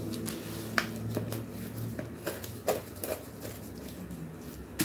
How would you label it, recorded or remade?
recorded